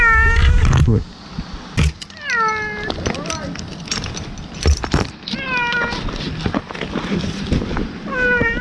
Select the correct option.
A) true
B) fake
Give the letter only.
A